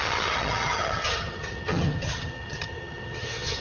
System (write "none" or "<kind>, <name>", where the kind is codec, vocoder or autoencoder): vocoder, HiFi-GAN